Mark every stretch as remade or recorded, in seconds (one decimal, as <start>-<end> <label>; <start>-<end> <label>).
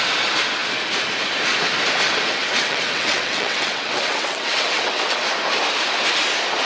0.0-2.4 recorded; 2.4-5.2 remade; 5.2-6.7 recorded